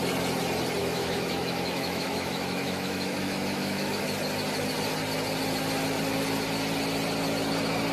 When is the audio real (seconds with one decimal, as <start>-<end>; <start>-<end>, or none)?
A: 0.0-0.8; 4.0-7.9